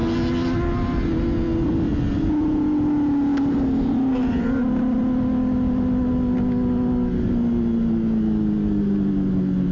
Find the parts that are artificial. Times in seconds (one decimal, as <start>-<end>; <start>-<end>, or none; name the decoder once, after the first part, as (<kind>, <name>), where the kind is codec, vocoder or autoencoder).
none